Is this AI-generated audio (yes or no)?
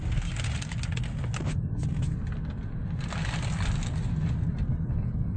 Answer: no